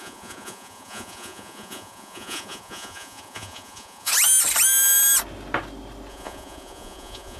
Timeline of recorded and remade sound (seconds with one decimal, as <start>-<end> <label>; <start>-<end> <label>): 0.0-4.1 remade; 4.1-6.1 recorded; 6.1-7.4 remade